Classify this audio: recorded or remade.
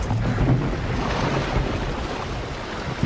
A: recorded